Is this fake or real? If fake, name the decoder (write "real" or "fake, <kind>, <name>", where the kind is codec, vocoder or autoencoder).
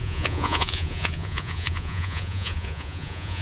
fake, vocoder, Vocos